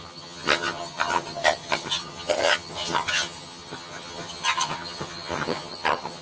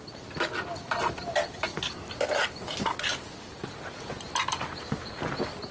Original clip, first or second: second